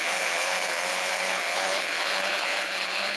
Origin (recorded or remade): remade